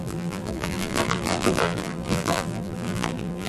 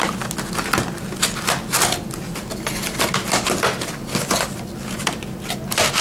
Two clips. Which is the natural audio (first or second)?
second